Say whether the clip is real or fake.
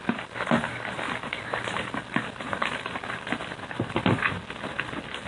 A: real